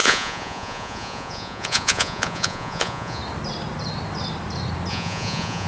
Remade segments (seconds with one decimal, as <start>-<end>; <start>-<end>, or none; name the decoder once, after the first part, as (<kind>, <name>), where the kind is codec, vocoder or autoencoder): 0.0-3.2 (vocoder, Vocos); 4.9-5.7